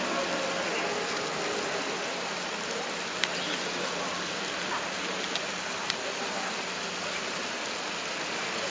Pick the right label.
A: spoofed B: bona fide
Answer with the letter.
B